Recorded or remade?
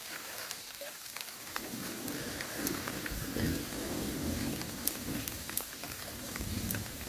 remade